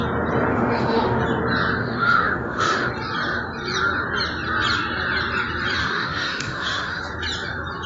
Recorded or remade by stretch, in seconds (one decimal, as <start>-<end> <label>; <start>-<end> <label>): 0.0-0.5 recorded; 0.5-1.2 remade; 1.2-1.8 recorded; 1.8-2.9 remade; 2.9-5.8 recorded; 5.8-7.0 remade; 7.0-7.9 recorded